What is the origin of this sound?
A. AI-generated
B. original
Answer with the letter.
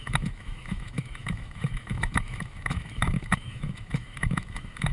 A